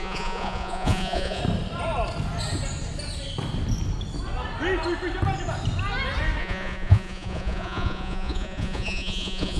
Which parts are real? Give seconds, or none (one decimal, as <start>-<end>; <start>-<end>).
1.4-6.4